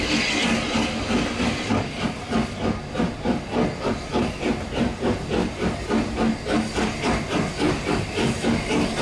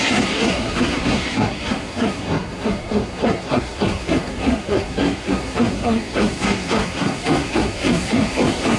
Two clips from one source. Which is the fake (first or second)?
second